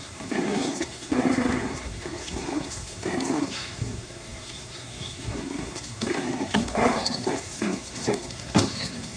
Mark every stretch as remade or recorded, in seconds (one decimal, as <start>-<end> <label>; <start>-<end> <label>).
0.0-9.2 remade